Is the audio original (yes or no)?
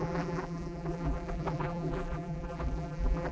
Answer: no